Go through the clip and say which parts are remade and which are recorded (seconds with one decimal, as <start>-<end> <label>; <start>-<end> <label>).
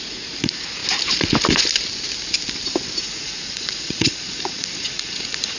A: 0.0-0.8 remade; 0.8-3.0 recorded; 3.0-5.6 remade